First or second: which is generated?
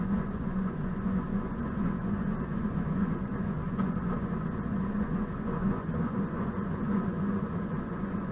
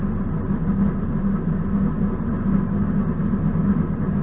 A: first